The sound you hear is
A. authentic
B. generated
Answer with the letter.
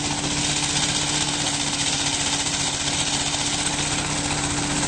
A